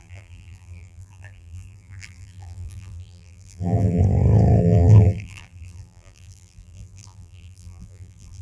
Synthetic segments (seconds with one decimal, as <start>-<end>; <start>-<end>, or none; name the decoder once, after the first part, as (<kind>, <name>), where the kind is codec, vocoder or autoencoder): 0.0-4.0 (vocoder, BigVGAN v2); 4.6-8.4

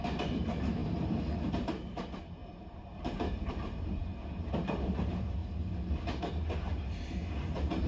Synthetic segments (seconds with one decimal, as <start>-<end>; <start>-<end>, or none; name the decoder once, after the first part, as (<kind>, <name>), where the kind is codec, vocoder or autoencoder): 0.0-5.4 (vocoder, BigVGAN v2); 6.3-7.9

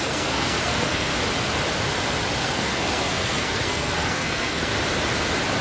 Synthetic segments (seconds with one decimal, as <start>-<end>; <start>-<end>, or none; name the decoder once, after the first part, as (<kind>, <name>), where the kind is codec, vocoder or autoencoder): 0.0-1.1 (codec, SNAC); 2.4-4.7

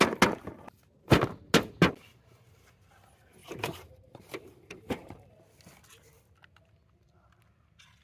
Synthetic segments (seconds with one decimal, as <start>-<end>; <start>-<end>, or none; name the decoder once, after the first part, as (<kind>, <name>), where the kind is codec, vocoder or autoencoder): 3.4-5.3 (vocoder, BigVGAN v2)

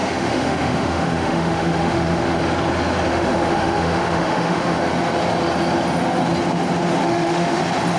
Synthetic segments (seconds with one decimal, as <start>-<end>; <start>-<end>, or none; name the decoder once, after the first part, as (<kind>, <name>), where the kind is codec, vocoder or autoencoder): 0.0-2.4 (autoencoder, DAC-VAE); 3.1-4.8; 7.0-7.6